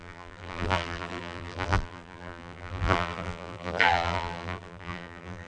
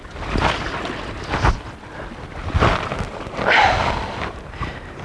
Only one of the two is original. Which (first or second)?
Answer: second